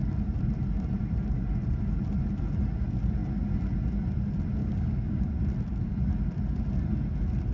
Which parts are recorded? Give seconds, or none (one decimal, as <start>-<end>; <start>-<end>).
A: 0.0-4.6; 5.3-7.5